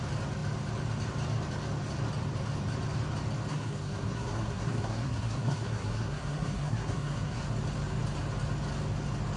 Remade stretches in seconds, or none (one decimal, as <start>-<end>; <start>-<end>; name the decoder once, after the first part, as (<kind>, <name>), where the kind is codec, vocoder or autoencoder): 3.5-7.4 (codec, SNAC)

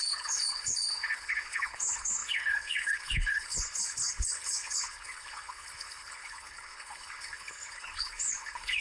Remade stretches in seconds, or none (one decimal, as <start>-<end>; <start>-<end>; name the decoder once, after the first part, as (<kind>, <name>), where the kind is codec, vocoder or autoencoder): 0.0-8.8 (codec, HILCodec)

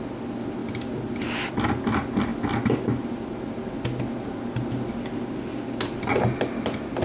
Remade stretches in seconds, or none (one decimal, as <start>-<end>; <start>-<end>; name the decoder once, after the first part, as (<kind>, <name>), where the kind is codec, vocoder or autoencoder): none

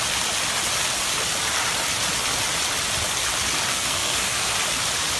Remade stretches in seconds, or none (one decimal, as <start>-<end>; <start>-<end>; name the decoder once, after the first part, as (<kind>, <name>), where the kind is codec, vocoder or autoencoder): 3.7-4.5 (codec, SNAC)

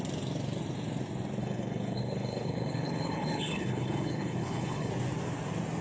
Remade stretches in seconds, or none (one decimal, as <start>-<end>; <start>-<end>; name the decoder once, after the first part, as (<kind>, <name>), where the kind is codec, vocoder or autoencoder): 1.4-4.9 (codec, HILCodec)

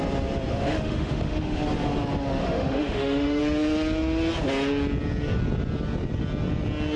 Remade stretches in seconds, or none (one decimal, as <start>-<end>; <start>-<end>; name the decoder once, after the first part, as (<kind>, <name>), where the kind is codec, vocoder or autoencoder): 0.5-1.6 (autoencoder, DAC-VAE); 2.4-3.4

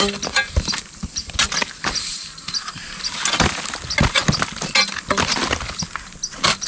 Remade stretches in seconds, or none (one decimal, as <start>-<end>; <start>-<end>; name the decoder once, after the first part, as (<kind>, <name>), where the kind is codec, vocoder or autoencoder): none